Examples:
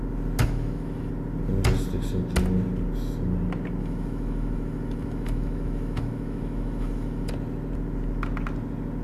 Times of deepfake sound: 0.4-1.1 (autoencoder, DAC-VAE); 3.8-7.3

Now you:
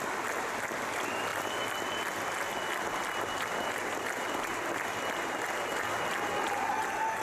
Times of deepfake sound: none

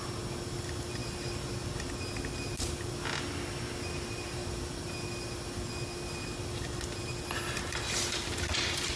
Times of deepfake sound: none

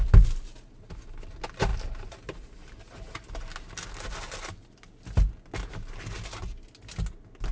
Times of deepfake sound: none

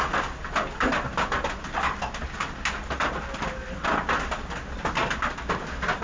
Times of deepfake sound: none

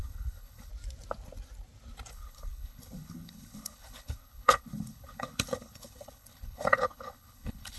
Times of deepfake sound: 0.0-0.7 (codec, HILCodec); 2.1-7.8

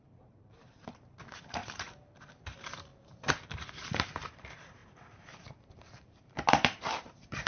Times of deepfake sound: 0.0-4.8 (vocoder, BigVGAN v2); 5.5-7.5

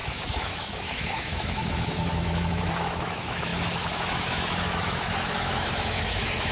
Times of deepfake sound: 0.0-6.5 (autoencoder, DAC-VAE)